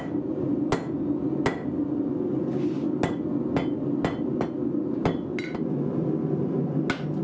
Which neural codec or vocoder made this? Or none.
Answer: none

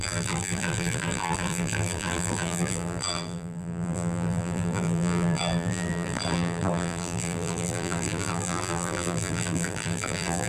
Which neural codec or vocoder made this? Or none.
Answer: vocoder, BigVGAN v2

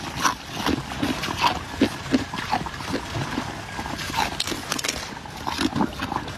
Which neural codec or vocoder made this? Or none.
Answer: none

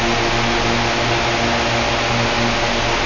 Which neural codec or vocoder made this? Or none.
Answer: none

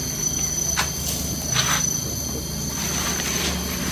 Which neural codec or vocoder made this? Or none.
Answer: none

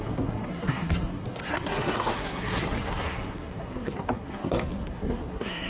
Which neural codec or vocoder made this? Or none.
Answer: codec, SNAC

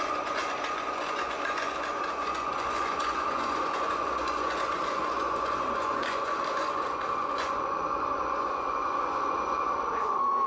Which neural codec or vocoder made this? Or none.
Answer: vocoder, Vocos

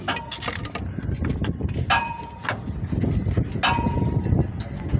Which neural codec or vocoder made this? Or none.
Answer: none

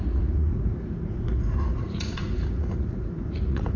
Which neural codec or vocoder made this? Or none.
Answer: vocoder, Vocos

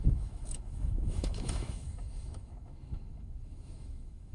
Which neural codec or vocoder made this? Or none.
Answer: autoencoder, DAC-VAE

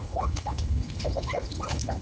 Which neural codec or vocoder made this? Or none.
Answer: codec, HILCodec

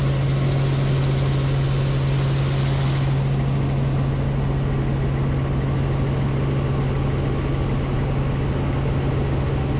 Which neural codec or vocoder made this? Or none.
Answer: none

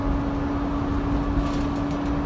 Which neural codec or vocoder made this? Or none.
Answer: none